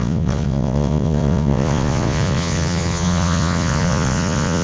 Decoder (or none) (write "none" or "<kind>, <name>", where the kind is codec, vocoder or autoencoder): vocoder, Vocos